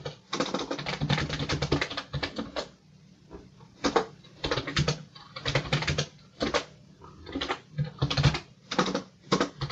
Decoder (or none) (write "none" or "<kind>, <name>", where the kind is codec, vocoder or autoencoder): none